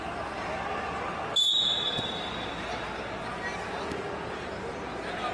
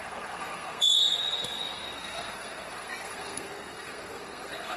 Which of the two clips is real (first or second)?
first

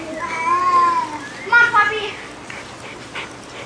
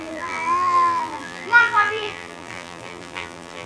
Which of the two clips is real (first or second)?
first